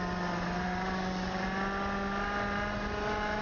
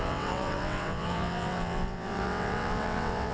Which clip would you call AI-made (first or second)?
second